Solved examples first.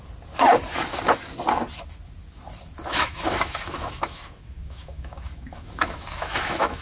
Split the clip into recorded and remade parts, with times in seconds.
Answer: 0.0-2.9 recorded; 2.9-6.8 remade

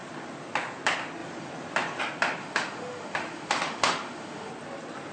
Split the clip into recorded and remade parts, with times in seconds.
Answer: 0.0-2.4 recorded; 2.4-4.5 remade; 4.5-5.1 recorded

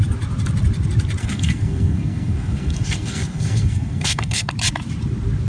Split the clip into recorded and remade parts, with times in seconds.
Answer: 0.0-1.2 recorded; 1.2-4.5 remade; 4.5-5.5 recorded

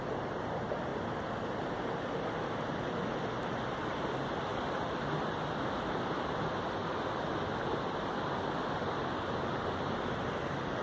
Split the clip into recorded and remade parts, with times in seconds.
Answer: 0.0-10.8 recorded